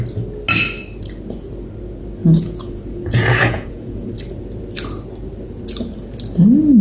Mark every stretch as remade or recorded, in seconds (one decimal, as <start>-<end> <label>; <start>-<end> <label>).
0.0-2.2 recorded; 2.2-4.1 remade; 4.1-6.8 recorded